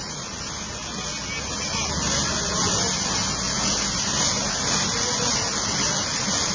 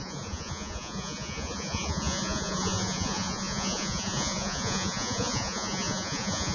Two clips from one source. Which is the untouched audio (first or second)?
first